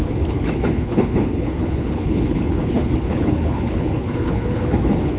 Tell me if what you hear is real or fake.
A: fake